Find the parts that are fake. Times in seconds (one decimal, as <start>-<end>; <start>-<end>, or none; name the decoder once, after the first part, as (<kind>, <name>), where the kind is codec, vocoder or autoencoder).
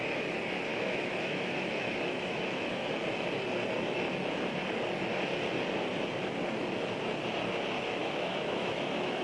0.7-2.9 (autoencoder, DAC-VAE); 8.0-9.2